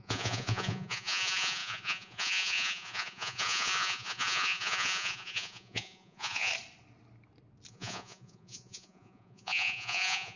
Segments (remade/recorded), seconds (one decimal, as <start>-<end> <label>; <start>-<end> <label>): 0.0-6.5 remade; 6.5-7.7 recorded; 7.7-10.4 remade